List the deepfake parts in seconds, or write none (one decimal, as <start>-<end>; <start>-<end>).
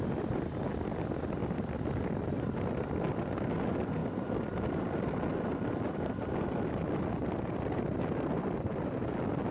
none